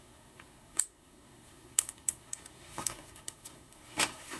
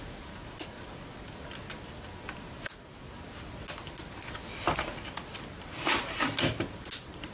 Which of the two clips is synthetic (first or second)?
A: first